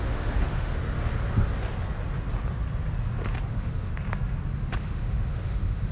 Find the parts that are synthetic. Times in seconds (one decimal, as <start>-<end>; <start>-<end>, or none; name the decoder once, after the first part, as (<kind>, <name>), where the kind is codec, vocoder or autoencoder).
0.0-0.7 (autoencoder, DAC-VAE); 3.5-3.9; 4.8-5.9